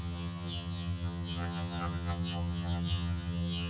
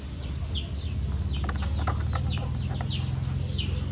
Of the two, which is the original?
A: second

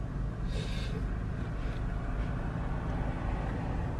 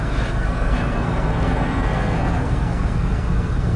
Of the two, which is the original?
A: first